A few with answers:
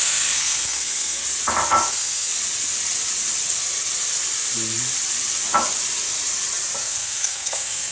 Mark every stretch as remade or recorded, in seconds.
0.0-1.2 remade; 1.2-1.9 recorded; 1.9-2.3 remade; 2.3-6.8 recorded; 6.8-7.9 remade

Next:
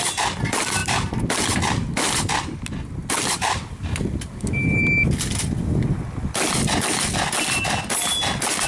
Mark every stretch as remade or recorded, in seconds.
0.0-8.7 recorded

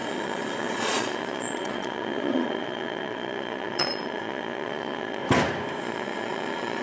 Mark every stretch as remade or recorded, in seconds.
0.0-5.2 remade; 5.2-5.8 recorded; 5.8-6.8 remade

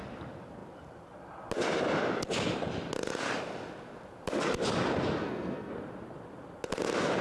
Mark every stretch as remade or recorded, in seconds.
0.0-5.2 recorded; 5.2-5.7 remade; 5.7-7.2 recorded

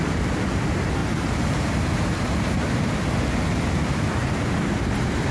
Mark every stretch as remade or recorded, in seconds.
0.0-5.3 recorded

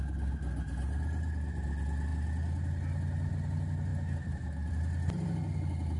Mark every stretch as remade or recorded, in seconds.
0.0-6.0 recorded